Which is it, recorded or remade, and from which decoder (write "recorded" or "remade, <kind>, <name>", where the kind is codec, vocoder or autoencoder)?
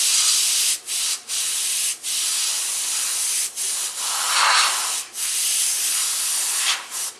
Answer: recorded